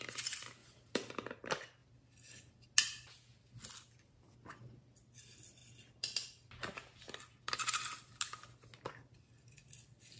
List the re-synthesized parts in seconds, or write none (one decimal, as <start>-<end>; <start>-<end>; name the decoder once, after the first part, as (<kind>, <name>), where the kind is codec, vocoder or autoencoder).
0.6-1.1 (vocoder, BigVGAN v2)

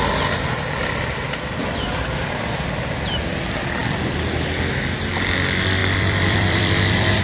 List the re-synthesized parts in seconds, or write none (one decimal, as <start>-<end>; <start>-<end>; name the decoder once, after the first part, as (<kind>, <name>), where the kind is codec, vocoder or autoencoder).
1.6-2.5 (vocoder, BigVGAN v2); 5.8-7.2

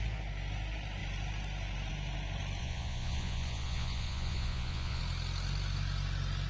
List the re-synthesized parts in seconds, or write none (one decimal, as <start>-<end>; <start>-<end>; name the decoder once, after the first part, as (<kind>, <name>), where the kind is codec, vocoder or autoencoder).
2.6-5.0 (vocoder, Vocos)

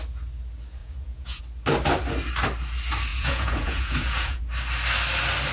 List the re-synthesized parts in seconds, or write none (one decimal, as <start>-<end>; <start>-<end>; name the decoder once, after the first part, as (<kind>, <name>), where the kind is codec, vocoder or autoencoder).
0.8-1.4 (vocoder, Vocos); 3.1-4.4